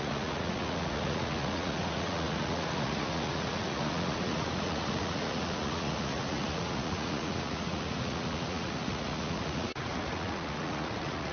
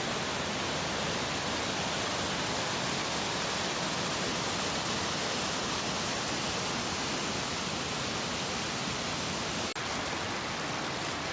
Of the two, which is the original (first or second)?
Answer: second